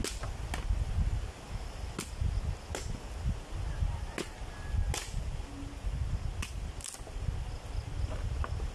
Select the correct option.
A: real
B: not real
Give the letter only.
A